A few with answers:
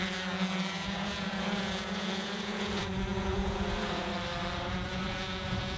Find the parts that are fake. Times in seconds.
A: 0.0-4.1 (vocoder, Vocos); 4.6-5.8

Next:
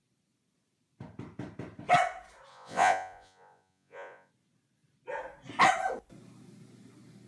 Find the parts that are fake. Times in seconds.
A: 2.5-4.3 (vocoder, Vocos)

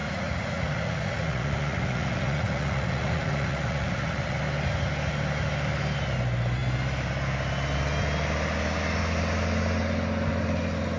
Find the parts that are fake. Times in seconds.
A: 0.0-4.4 (vocoder, Vocos)

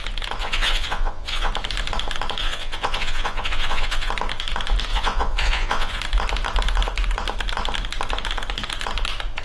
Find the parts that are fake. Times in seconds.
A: 0.4-1.5 (vocoder, Vocos); 2.4-4.1; 4.9-6.0

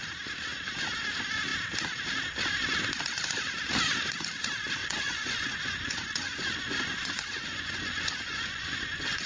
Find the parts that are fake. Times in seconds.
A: 4.8-9.3 (vocoder, Vocos)